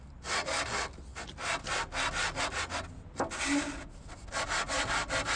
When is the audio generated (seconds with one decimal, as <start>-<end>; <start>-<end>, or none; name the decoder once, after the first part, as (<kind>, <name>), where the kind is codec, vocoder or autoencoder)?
none